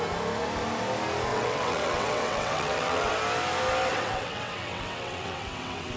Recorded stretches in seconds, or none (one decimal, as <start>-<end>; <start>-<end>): 0.0-1.3; 3.1-3.9